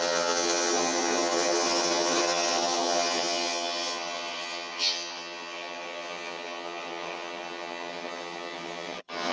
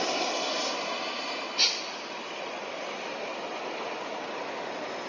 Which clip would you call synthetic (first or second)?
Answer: first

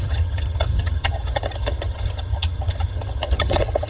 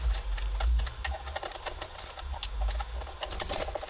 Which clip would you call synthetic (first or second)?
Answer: first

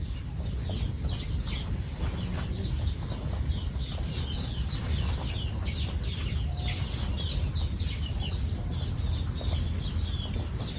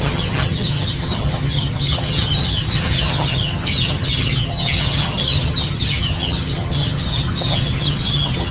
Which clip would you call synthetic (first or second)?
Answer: second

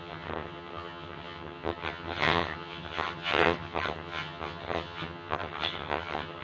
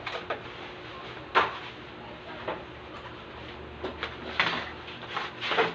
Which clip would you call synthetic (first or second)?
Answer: first